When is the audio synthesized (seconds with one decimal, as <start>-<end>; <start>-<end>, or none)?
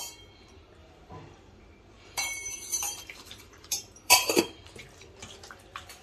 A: 0.8-4.4